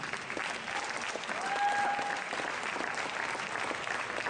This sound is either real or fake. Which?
real